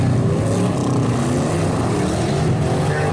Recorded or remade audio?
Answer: recorded